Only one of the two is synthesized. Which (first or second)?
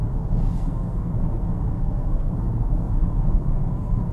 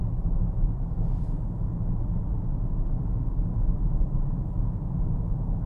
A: first